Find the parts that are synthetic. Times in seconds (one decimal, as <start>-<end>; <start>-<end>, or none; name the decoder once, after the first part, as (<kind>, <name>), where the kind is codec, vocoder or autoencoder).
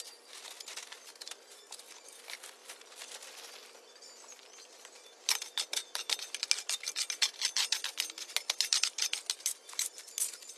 1.1-1.7 (vocoder, BigVGAN v2); 2.6-6.5